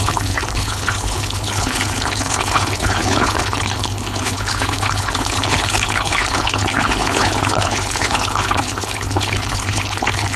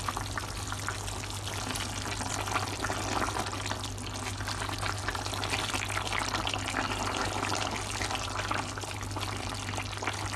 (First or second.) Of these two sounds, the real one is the second